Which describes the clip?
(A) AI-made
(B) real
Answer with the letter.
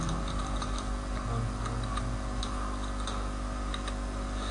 B